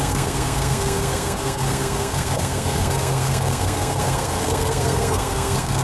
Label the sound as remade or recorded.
remade